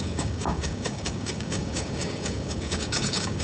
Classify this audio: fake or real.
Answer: fake